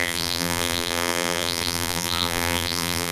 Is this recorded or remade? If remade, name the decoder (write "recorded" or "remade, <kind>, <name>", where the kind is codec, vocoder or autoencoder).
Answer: remade, vocoder, BigVGAN v2